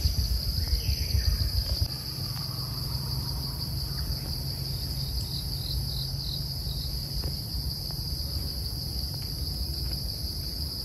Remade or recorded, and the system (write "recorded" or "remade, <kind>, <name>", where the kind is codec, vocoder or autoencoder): recorded